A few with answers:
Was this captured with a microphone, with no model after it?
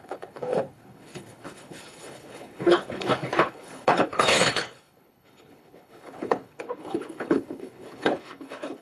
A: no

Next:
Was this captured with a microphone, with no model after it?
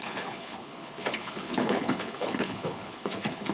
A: no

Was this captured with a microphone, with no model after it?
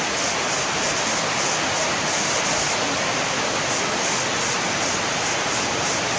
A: yes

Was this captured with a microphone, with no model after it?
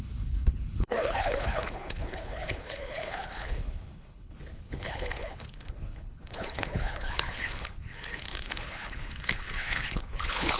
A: no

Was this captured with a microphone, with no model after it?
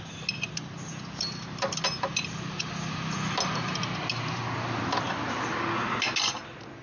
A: yes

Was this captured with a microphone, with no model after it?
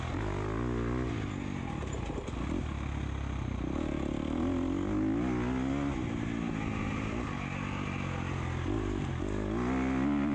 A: yes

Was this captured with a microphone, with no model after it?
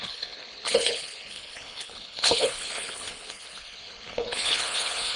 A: no